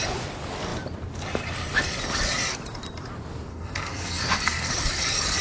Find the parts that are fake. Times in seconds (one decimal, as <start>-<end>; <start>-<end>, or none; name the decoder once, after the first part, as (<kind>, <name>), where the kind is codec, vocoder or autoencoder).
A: 3.5-4.7 (codec, SNAC)